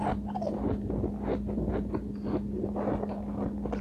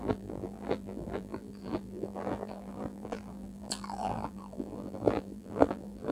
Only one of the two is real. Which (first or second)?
first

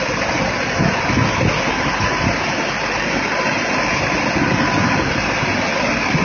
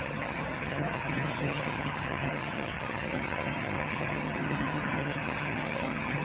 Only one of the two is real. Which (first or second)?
first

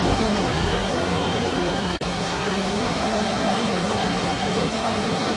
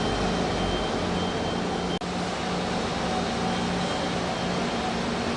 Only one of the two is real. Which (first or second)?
second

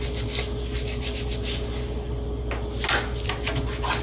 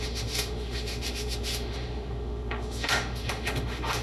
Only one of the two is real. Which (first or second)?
first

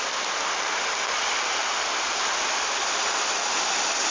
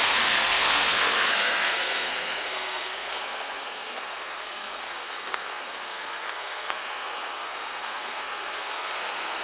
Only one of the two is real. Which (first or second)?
first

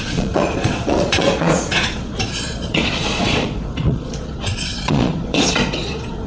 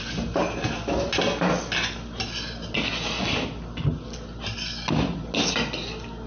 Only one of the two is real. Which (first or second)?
second